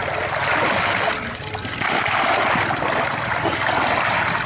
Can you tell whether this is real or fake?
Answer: real